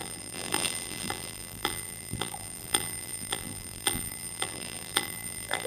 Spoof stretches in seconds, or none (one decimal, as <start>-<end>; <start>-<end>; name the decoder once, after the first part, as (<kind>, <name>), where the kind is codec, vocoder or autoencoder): 0.0-5.7 (vocoder, BigVGAN v2)